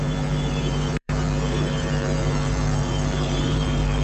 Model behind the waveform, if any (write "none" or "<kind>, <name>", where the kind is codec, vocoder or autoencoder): vocoder, BigVGAN v2